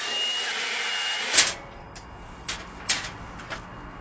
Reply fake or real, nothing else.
real